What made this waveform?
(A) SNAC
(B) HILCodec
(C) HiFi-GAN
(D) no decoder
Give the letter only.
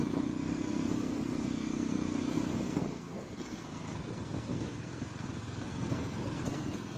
A